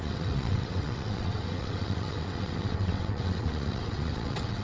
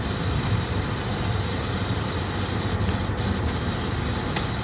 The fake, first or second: first